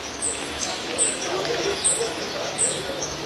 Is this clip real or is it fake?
fake